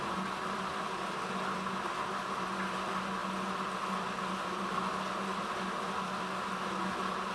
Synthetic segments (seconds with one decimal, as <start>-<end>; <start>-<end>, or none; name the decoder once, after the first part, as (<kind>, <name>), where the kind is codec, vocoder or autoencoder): none